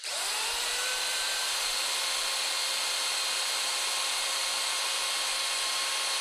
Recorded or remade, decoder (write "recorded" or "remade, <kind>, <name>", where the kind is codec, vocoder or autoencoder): remade, vocoder, BigVGAN v2